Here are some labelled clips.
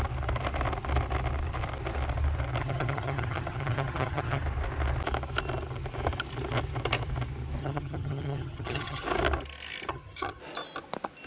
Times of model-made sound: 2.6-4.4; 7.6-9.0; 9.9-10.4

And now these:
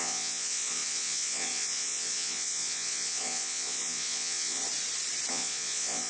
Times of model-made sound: 0.0-4.6; 5.3-6.1

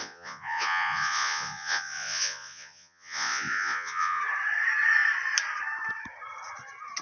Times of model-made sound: 0.0-4.2

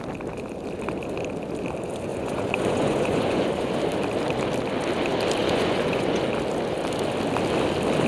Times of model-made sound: 2.1-3.7; 5.4-6.2

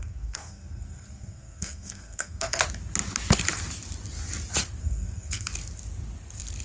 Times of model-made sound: 0.0-2.6; 4.8-5.5

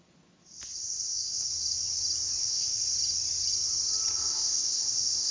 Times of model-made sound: 0.8-1.5; 2.4-2.9; 4.1-5.3

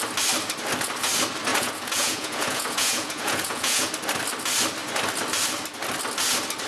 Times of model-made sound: 1.5-3.9